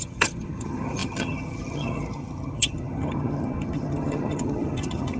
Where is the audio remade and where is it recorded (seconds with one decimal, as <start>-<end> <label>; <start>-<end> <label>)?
0.0-5.2 remade